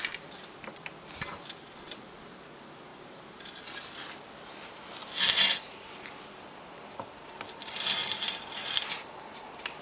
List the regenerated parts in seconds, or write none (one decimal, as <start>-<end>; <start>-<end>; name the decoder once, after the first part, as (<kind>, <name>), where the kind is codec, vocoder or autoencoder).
2.9-3.6 (vocoder, BigVGAN v2)